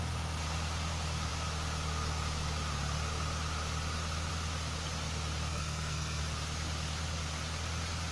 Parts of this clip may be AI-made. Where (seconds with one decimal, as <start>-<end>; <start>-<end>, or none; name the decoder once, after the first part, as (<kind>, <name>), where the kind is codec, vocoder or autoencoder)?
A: 5.5-6.2 (codec, SNAC)